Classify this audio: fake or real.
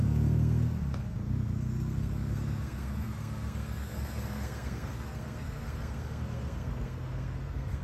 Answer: fake